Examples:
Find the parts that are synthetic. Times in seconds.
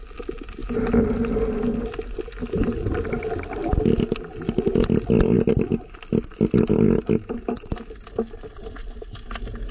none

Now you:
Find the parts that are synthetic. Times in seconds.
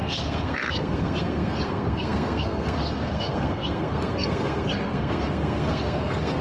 0.0-6.4 (codec, SNAC)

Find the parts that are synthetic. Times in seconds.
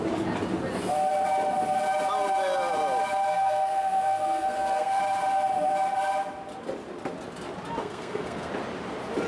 3.3-5.0 (codec, SNAC); 7.8-8.5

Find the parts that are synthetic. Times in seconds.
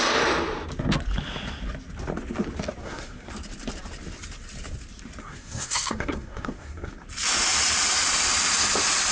2.8-3.3 (codec, SNAC); 5.2-6.9